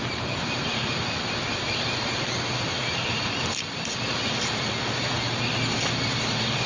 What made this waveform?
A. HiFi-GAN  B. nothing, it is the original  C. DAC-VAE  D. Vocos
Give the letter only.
B